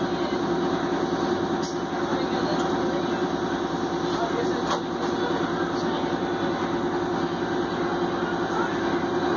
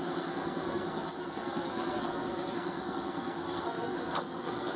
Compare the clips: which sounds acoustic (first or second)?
first